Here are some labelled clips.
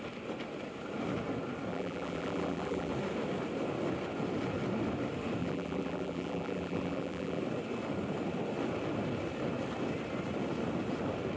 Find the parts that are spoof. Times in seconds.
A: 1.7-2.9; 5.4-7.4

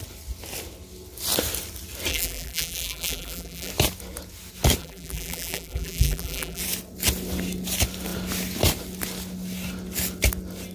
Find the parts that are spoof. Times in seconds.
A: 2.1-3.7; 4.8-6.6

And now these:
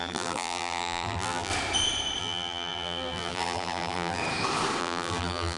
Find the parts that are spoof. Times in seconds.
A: 0.0-1.5; 2.2-4.2; 4.8-5.6

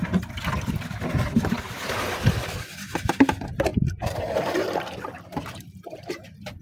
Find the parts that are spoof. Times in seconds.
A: 3.7-6.1

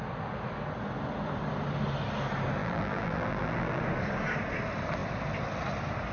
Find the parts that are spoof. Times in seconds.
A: 2.6-3.8

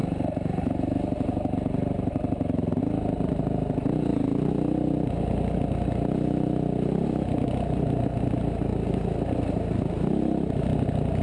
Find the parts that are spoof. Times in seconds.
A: 0.0-2.8